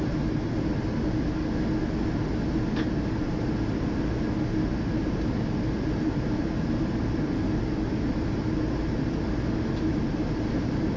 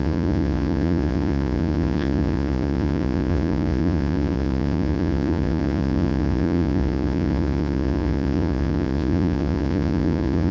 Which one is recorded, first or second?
first